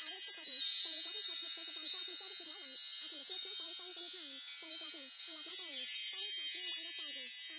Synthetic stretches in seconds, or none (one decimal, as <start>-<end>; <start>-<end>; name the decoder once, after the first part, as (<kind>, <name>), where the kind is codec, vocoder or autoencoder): 0.0-2.5 (vocoder, Vocos); 3.2-3.9; 4.7-6.1

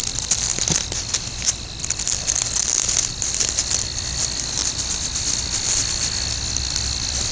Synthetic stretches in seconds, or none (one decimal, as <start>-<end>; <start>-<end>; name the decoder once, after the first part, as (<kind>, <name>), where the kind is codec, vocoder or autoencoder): none

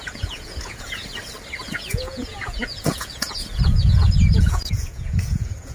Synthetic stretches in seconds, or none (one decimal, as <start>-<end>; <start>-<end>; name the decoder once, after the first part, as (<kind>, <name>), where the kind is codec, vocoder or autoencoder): 0.0-1.0 (vocoder, Vocos); 1.7-5.7

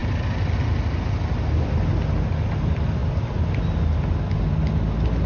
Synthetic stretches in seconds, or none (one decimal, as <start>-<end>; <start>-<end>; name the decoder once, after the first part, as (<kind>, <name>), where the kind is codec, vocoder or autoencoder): none